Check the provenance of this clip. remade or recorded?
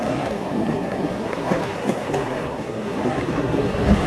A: remade